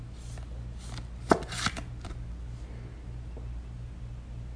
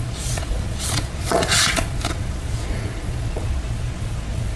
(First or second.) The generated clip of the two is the second